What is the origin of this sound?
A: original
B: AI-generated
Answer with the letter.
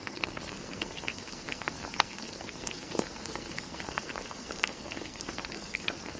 B